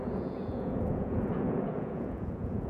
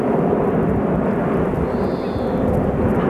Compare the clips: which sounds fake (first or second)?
first